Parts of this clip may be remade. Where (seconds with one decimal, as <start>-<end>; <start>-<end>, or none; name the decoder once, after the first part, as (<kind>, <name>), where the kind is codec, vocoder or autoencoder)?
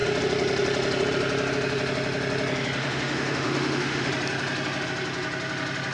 2.8-4.1 (autoencoder, DAC-VAE)